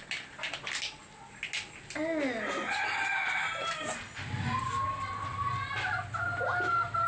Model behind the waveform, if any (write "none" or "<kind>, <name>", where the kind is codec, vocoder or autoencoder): none